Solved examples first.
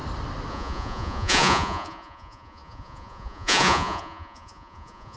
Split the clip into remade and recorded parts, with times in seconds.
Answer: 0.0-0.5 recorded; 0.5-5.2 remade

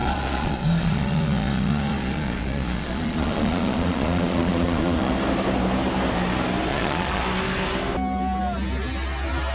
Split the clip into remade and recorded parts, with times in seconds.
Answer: 0.0-5.1 remade; 5.1-6.7 recorded; 6.7-7.2 remade; 7.2-9.5 recorded

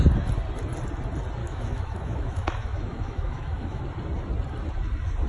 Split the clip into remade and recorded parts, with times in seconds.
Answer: 0.0-1.4 recorded; 1.4-3.8 remade; 3.8-5.3 recorded

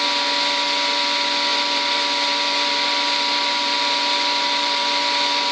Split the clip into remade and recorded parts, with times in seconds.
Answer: 0.0-1.5 recorded; 1.5-4.8 remade; 4.8-5.5 recorded